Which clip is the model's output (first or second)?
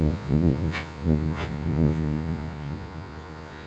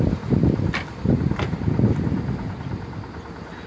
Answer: first